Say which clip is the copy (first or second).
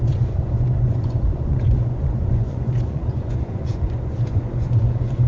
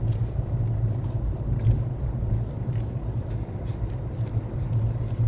first